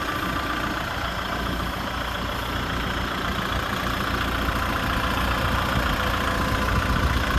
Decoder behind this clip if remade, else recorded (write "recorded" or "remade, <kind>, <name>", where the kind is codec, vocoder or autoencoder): recorded